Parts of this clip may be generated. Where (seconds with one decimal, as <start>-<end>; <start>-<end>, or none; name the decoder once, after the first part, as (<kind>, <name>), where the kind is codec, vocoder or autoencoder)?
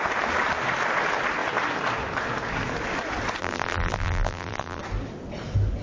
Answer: 3.4-4.8 (vocoder, BigVGAN v2)